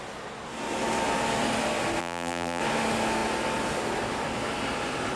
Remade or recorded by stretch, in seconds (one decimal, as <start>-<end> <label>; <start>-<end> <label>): 0.0-2.0 recorded; 2.0-2.6 remade; 2.6-5.2 recorded